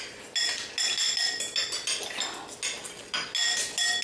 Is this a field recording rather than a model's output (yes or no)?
yes